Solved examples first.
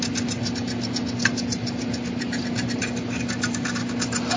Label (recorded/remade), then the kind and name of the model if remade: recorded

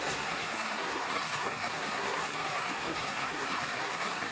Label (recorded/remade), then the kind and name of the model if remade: remade, codec, SNAC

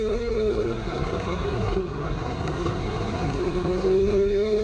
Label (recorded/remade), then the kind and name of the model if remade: remade, codec, SNAC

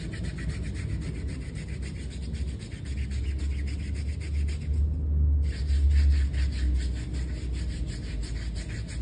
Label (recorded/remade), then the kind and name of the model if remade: recorded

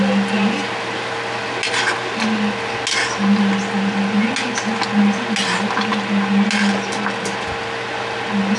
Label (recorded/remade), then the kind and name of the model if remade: recorded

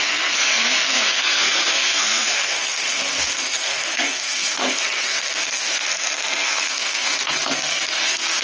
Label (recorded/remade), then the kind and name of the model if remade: remade, codec, SNAC